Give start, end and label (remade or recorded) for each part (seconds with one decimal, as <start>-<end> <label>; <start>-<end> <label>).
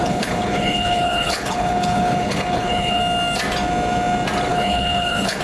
0.0-3.0 remade; 3.0-4.5 recorded; 4.5-5.4 remade